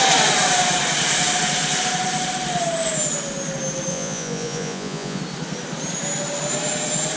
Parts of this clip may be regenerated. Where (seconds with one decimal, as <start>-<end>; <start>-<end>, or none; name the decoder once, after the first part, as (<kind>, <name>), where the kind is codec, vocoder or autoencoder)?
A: 3.9-5.2 (vocoder, Vocos)